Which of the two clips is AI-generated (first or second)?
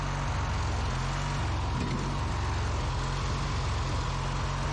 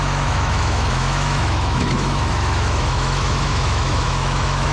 second